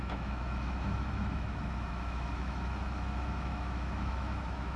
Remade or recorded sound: remade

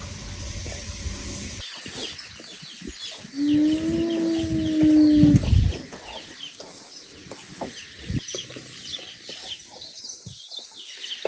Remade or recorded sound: recorded